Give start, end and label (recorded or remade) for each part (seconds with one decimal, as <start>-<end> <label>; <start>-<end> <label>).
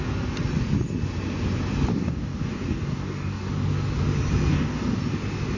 0.0-1.9 recorded; 1.9-3.5 remade; 3.5-4.5 recorded; 4.5-5.0 remade; 5.0-5.6 recorded